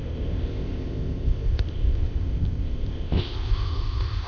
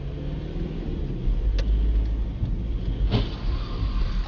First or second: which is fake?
first